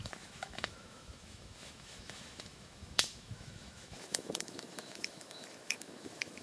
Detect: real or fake fake